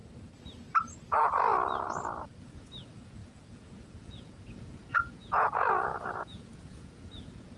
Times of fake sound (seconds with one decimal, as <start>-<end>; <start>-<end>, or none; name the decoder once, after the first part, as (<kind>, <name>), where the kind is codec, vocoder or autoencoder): 2.4-7.6 (vocoder, Vocos)